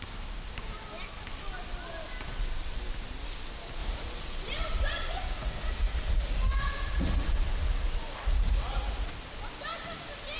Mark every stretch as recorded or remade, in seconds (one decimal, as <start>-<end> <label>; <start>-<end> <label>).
0.0-3.8 recorded; 3.8-9.1 remade; 9.1-10.4 recorded